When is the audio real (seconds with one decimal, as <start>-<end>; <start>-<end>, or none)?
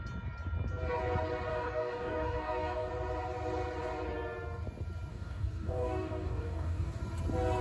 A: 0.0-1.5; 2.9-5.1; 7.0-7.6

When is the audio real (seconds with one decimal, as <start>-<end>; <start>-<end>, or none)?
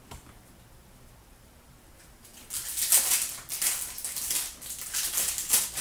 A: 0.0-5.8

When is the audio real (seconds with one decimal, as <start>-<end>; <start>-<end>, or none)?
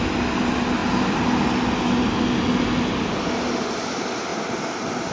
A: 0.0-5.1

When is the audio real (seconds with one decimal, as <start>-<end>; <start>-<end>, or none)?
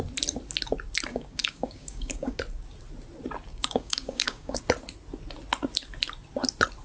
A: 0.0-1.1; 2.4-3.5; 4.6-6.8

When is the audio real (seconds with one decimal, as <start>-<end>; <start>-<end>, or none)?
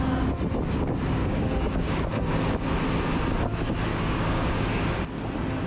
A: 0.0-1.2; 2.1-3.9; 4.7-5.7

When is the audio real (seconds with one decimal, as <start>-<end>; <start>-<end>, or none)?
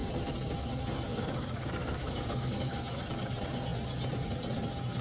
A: 0.0-1.1; 2.8-5.0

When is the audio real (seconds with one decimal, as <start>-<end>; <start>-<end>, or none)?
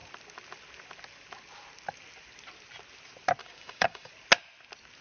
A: 0.0-3.4; 4.1-5.0